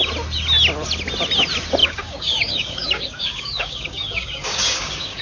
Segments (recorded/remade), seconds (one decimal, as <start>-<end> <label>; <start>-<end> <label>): 0.0-1.8 recorded; 1.8-5.2 remade